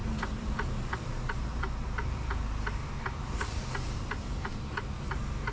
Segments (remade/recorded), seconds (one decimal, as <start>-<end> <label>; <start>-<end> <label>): 0.0-2.3 remade; 2.3-2.8 recorded; 2.8-4.5 remade; 4.5-5.5 recorded